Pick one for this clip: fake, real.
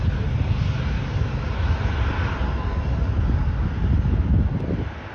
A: real